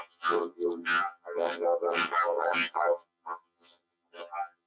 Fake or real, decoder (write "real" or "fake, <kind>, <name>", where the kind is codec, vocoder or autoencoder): fake, vocoder, HiFi-GAN